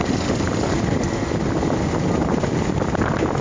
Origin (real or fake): real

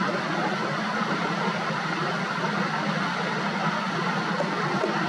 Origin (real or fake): real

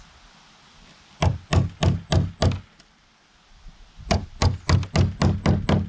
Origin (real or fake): real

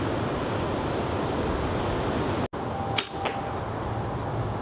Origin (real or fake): real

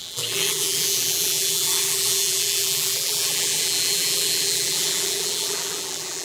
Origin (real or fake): fake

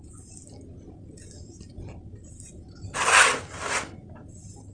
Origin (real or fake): real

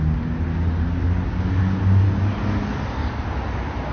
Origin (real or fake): real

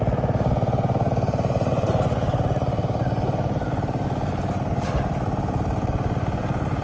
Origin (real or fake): real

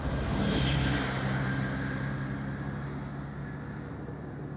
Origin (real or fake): real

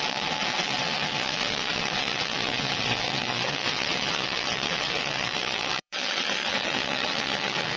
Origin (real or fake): fake